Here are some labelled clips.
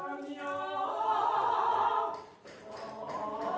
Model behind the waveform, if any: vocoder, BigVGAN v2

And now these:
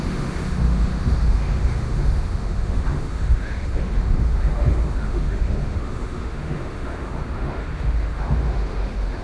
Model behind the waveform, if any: autoencoder, DAC-VAE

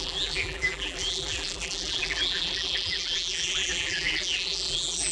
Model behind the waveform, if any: vocoder, BigVGAN v2